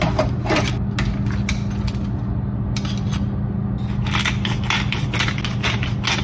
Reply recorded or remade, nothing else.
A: recorded